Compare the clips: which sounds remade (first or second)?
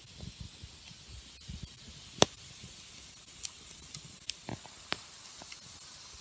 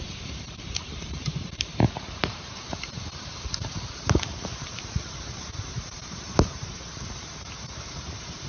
second